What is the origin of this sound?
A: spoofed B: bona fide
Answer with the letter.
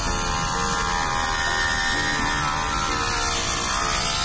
B